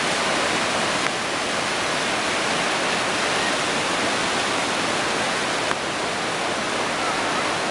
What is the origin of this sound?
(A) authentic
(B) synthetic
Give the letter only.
A